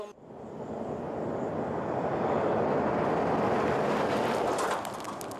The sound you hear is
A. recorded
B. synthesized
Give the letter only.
A